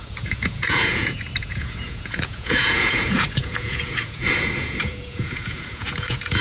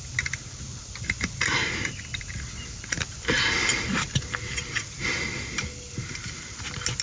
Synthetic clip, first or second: first